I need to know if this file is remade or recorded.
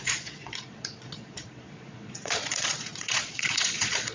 remade